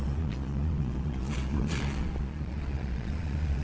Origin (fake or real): fake